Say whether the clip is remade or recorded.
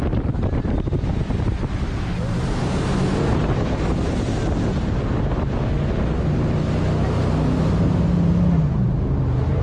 recorded